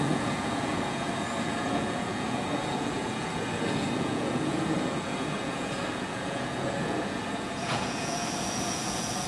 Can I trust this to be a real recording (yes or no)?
no